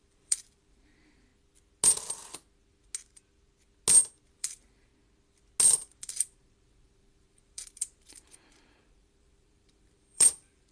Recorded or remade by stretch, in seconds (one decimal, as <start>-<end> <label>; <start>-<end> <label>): 0.0-1.3 remade; 1.3-4.3 recorded; 4.3-4.9 remade; 4.9-6.0 recorded; 6.0-10.7 remade